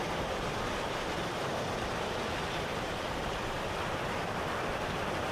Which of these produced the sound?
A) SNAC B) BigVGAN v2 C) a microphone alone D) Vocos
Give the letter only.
B